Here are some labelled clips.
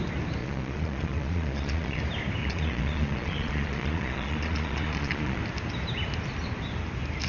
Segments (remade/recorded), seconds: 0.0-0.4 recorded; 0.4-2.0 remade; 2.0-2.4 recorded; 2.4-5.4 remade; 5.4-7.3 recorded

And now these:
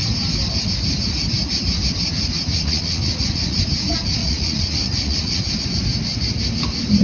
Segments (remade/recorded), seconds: 0.0-2.5 recorded; 2.5-3.6 remade; 3.6-4.2 recorded; 4.2-5.5 remade; 5.5-7.0 recorded

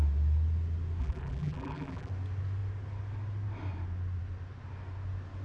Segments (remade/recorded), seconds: 0.0-1.0 recorded; 1.0-2.1 remade; 2.1-5.4 recorded